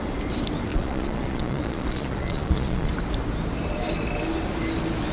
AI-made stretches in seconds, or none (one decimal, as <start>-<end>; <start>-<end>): 0.7-2.9